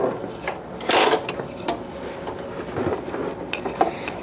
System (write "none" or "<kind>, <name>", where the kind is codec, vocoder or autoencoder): none